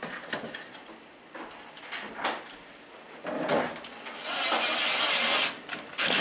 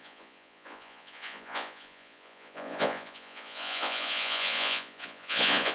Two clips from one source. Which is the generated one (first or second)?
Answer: second